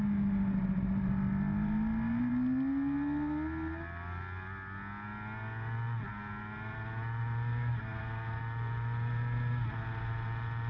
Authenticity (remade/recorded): recorded